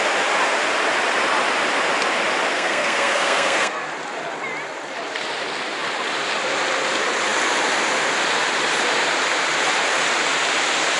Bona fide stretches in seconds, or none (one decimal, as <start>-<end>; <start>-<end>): 0.0-2.5; 3.9-11.0